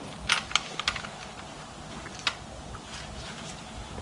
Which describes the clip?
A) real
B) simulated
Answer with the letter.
A